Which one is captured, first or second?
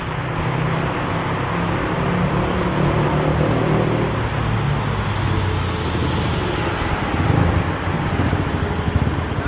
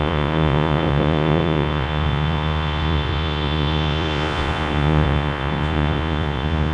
first